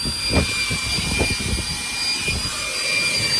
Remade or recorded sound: recorded